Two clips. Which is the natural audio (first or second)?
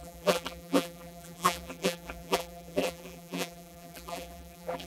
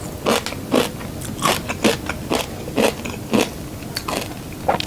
second